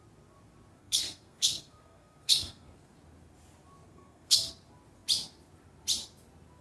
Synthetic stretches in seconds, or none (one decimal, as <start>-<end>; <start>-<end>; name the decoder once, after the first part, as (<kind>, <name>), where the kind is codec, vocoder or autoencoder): 0.8-3.0 (codec, SNAC); 3.9-4.5